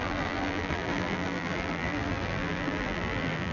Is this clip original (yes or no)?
no